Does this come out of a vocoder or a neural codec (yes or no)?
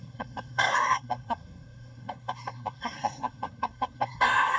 yes